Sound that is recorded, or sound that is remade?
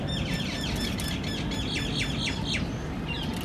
recorded